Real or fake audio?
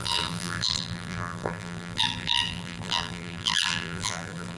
fake